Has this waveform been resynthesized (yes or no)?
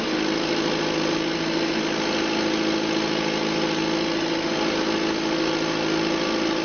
no